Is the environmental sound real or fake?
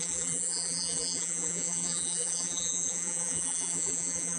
fake